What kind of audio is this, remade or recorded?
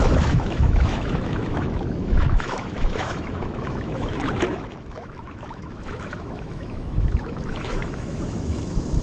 remade